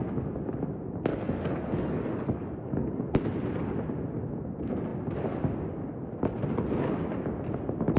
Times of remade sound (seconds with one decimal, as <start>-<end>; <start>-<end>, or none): 1.1-3.0